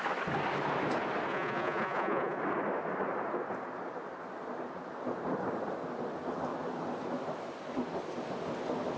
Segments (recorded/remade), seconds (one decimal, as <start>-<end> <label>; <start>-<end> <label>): 0.0-1.3 recorded; 1.3-2.4 remade; 2.4-9.0 recorded